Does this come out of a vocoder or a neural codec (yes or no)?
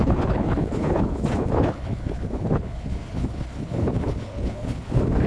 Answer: yes